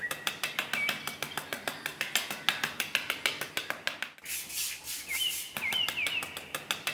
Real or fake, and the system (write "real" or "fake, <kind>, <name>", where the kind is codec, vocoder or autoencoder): real